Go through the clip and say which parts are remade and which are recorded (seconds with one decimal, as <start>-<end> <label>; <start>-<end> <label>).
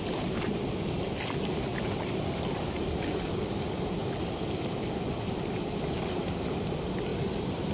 0.0-7.1 recorded; 7.1-7.7 remade